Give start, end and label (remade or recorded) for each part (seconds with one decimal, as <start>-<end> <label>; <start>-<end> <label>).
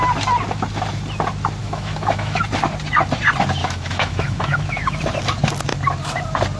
0.0-1.6 recorded; 1.6-2.4 remade; 2.4-3.6 recorded; 3.6-5.0 remade; 5.0-6.6 recorded